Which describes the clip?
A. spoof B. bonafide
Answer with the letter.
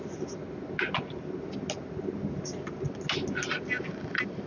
B